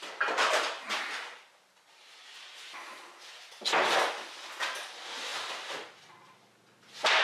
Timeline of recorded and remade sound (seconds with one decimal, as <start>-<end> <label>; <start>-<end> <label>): 0.0-2.0 recorded; 2.0-3.9 remade; 3.9-7.2 recorded